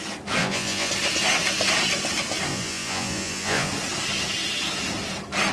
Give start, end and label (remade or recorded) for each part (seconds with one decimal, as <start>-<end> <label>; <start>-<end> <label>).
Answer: 0.0-0.4 recorded; 0.4-0.9 remade; 0.9-2.5 recorded; 2.5-3.7 remade; 3.7-5.5 recorded